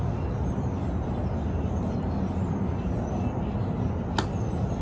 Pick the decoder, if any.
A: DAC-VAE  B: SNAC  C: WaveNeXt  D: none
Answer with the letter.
D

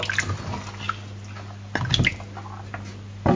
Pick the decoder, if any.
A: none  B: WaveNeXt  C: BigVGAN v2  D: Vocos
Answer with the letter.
A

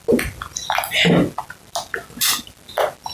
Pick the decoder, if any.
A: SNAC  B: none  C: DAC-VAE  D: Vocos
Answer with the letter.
B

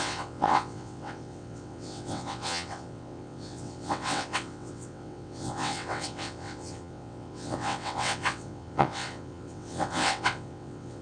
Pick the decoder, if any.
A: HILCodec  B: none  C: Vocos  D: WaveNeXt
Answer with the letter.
D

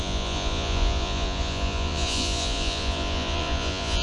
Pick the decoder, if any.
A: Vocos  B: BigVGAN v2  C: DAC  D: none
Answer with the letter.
A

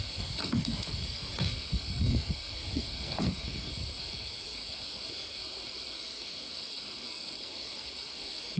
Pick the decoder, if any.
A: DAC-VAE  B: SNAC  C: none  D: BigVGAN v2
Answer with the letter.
B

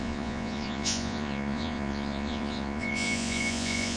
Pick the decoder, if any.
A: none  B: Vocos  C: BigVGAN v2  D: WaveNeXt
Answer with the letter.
B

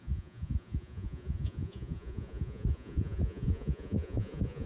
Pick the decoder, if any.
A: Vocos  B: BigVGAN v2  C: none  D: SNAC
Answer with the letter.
A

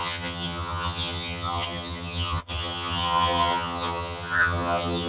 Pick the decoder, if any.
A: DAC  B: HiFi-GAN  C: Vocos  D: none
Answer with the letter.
B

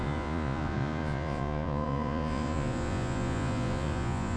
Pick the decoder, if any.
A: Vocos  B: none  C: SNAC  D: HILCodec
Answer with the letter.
A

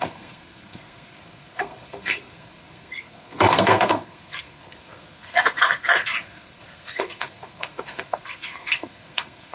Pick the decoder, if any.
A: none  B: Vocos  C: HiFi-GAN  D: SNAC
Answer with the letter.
D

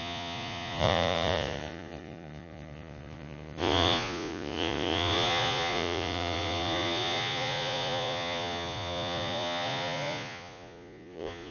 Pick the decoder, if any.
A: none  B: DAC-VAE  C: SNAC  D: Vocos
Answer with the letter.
D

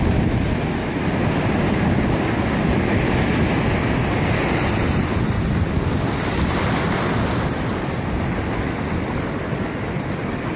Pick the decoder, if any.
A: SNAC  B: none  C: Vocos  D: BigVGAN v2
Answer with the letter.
B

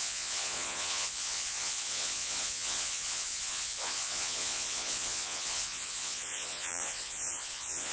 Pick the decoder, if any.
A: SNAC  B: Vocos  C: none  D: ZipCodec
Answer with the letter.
B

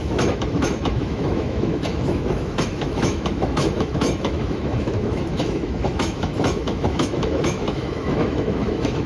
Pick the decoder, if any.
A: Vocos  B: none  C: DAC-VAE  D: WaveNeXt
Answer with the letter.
C